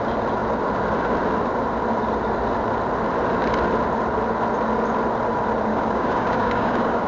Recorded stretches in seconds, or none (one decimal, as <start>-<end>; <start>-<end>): 0.0-5.7